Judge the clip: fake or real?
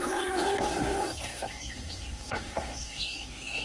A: fake